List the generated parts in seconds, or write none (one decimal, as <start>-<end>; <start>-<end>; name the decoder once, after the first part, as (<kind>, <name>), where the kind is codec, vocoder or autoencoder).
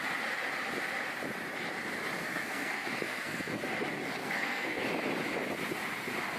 2.2-3.6 (codec, SNAC); 4.2-4.8